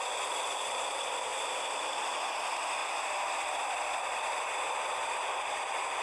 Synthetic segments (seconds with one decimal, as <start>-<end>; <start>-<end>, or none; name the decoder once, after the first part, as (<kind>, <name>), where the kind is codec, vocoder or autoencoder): 1.3-2.0 (vocoder, BigVGAN v2); 2.8-4.4